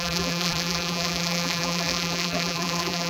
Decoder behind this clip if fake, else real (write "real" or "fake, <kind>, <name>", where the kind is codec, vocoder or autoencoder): fake, vocoder, BigVGAN v2